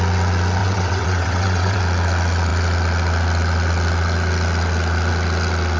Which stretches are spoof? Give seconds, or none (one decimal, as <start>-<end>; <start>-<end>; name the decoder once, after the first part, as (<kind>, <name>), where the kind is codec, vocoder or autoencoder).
0.6-1.8 (vocoder, WaveNeXt)